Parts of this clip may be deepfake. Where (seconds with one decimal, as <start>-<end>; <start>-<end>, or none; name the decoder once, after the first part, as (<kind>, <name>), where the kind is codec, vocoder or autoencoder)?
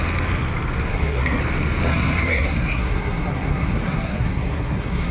0.9-1.4 (codec, SNAC); 1.9-5.1